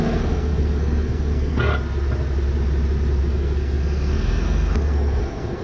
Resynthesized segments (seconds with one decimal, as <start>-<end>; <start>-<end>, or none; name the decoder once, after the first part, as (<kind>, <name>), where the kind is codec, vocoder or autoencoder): 0.0-1.7 (codec, SNAC); 3.2-5.6